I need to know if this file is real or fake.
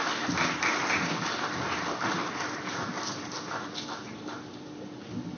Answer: real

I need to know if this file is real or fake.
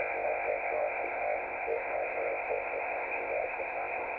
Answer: fake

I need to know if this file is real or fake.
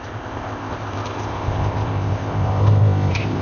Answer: fake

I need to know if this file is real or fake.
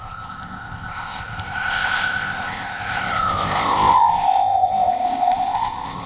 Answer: fake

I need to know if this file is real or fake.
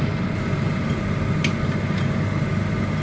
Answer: real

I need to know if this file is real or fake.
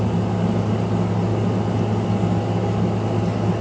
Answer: real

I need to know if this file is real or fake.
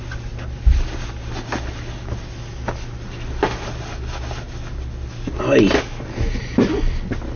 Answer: real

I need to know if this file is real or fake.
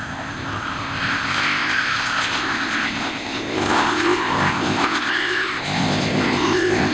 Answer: fake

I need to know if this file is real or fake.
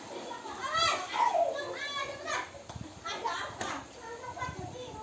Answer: real